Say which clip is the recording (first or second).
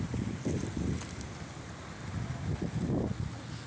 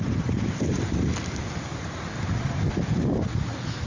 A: first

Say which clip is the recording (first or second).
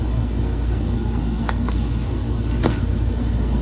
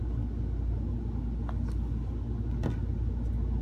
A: second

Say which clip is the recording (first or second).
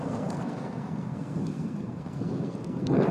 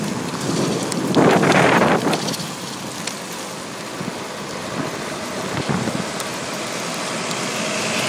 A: second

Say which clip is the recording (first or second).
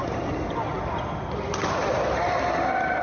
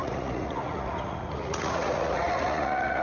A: first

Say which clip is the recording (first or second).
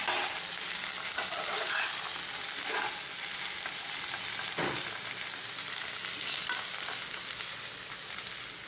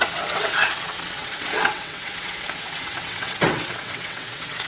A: first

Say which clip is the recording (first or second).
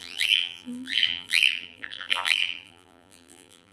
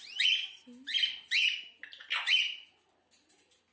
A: second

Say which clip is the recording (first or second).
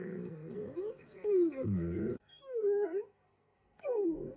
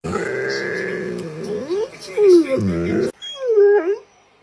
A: second